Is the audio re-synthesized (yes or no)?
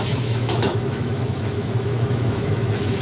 yes